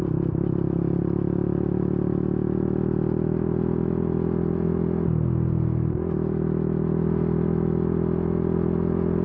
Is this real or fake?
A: real